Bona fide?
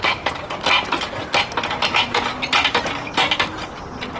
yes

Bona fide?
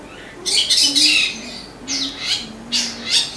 yes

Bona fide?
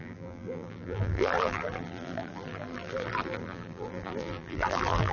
no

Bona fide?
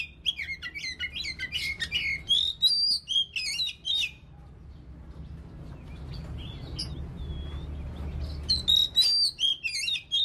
yes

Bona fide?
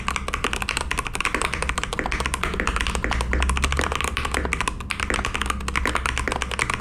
yes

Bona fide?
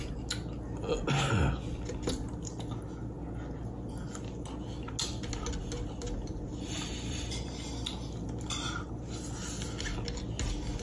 yes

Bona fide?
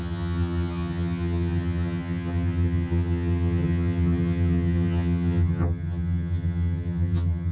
no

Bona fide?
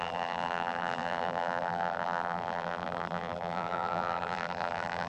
no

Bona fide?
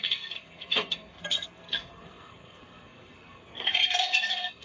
no